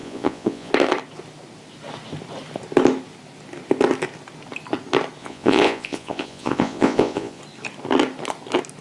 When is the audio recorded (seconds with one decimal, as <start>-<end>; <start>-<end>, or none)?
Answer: 0.7-5.2; 7.4-8.8